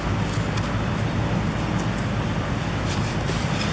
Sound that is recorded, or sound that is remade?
recorded